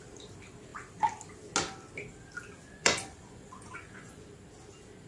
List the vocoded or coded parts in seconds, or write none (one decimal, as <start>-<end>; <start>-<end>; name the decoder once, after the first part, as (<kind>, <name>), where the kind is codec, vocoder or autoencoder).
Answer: 2.6-4.3 (vocoder, Vocos)